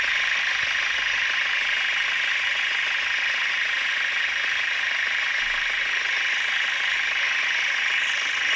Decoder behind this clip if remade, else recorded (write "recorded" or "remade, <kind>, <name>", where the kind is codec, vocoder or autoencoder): recorded